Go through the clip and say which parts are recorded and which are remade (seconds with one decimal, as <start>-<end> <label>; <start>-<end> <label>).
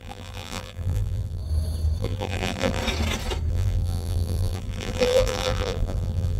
0.0-1.4 remade; 1.4-2.0 recorded; 2.0-2.8 remade; 2.8-3.5 recorded; 3.5-6.4 remade